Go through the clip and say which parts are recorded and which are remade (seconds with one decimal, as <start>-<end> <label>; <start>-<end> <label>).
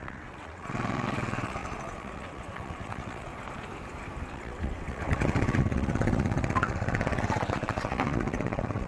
0.0-3.3 remade; 3.3-4.3 recorded; 4.3-8.9 remade